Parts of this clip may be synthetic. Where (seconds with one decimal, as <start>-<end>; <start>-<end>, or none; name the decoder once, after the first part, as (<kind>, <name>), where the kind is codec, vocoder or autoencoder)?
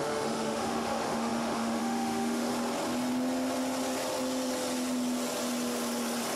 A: 0.0-2.5 (autoencoder, DAC-VAE)